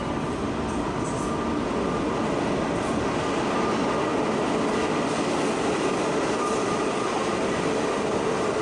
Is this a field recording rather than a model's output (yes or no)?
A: yes